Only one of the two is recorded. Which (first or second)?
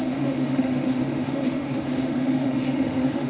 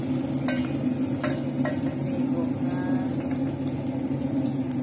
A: second